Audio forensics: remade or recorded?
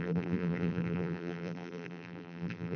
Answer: remade